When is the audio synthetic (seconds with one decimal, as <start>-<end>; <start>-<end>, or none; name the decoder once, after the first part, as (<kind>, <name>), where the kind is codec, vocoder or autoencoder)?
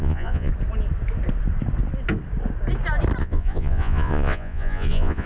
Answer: 0.0-0.5 (vocoder, Vocos); 3.2-5.3